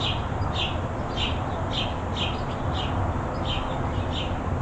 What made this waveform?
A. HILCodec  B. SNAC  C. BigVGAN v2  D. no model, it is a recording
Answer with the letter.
D